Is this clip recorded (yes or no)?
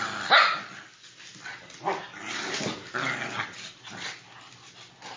yes